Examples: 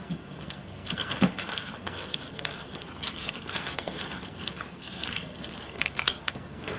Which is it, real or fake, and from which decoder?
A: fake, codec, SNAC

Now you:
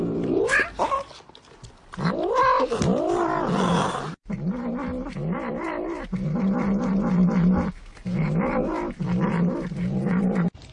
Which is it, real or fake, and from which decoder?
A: real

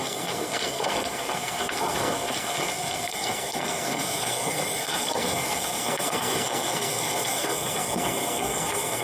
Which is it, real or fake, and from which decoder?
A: fake, codec, SNAC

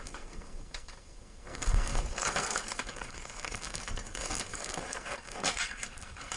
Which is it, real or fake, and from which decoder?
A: fake, codec, SNAC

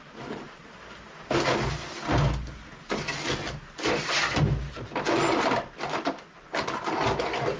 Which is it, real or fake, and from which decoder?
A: real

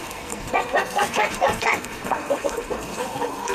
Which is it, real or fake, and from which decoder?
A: fake, codec, SNAC